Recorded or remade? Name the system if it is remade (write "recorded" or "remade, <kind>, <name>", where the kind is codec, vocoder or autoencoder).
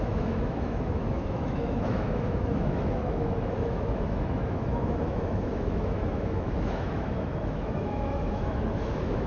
remade, autoencoder, DAC-VAE